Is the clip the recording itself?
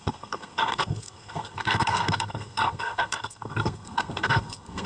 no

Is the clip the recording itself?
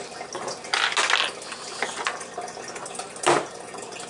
yes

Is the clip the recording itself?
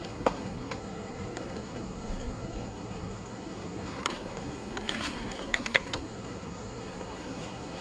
no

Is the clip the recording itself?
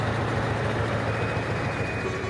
yes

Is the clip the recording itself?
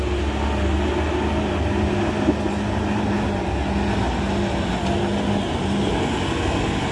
yes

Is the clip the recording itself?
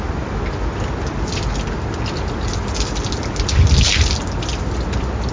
yes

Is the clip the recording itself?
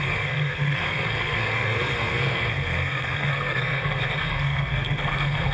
no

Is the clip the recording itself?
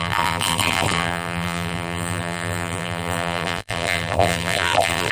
no